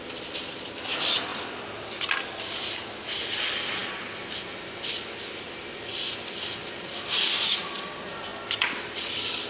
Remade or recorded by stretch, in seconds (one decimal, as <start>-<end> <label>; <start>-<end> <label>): 0.0-9.5 recorded